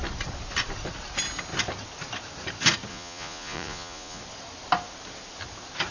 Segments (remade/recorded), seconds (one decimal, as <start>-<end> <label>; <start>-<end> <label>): 0.0-2.9 recorded; 2.9-4.2 remade; 4.2-5.9 recorded